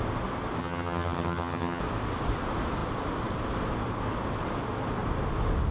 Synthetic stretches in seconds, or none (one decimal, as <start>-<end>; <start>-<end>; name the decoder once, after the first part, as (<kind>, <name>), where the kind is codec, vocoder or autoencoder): 0.6-1.8 (vocoder, HiFi-GAN)